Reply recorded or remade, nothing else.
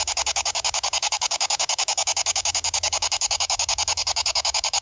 remade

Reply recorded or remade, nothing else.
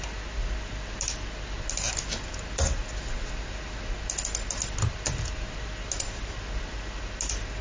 recorded